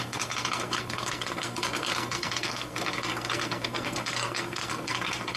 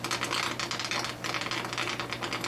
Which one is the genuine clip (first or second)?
second